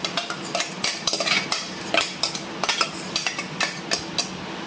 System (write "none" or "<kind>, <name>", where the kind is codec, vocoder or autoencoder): none